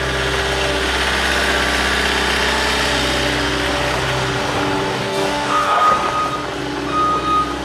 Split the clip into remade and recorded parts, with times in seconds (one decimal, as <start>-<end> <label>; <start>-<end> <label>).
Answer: 0.0-4.9 recorded; 4.9-5.9 remade; 5.9-7.6 recorded